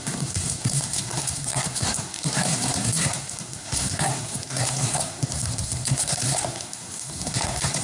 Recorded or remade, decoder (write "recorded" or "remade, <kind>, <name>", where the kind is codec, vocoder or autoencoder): remade, codec, SNAC